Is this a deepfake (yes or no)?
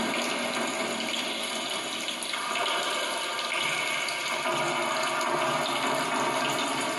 yes